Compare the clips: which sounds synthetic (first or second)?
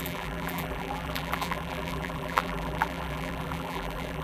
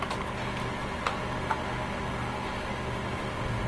first